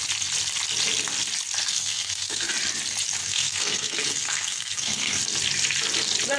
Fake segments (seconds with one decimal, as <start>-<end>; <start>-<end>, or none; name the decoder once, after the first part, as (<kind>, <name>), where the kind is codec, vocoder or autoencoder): 1.6-2.5 (codec, SNAC); 3.2-5.2